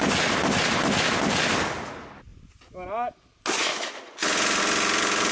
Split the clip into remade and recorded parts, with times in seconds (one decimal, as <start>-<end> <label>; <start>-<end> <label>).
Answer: 0.0-5.3 recorded

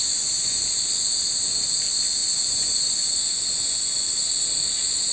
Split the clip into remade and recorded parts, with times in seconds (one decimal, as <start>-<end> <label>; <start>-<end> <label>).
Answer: 0.0-0.6 remade; 0.6-2.2 recorded; 2.2-4.1 remade; 4.1-5.1 recorded